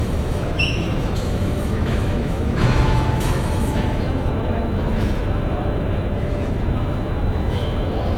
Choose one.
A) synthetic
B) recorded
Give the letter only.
A